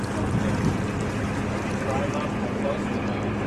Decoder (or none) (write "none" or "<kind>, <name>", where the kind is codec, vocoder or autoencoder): none